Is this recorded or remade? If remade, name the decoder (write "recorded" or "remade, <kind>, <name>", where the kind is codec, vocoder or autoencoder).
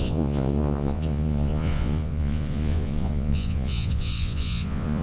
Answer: remade, vocoder, Vocos